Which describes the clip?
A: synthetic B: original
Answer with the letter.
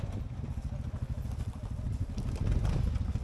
B